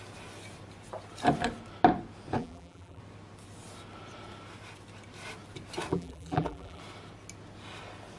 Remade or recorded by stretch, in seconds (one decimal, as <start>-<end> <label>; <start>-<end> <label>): 0.0-2.4 recorded; 2.4-3.0 remade; 3.0-5.9 recorded; 5.9-6.8 remade; 6.8-8.2 recorded